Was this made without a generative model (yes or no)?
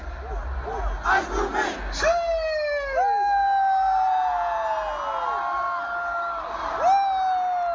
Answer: yes